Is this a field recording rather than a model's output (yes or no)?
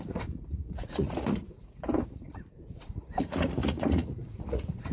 no